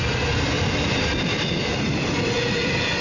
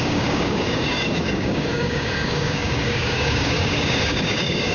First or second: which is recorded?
first